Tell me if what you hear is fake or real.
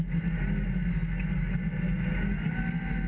real